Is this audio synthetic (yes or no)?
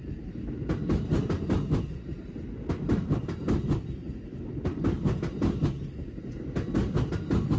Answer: no